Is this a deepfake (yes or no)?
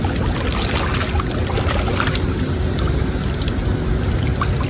no